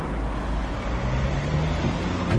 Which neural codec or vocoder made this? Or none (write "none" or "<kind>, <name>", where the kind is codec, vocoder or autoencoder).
none